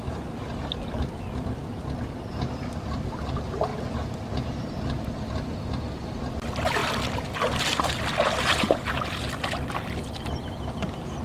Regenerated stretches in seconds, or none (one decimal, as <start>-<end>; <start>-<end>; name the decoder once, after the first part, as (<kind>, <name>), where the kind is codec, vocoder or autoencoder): none